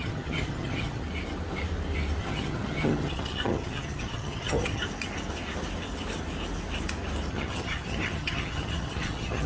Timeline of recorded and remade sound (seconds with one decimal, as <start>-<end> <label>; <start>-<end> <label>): 0.0-1.0 remade; 1.0-2.2 recorded; 2.2-4.8 remade; 4.8-7.3 recorded; 7.3-9.5 remade